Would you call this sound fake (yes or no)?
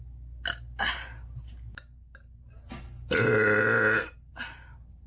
no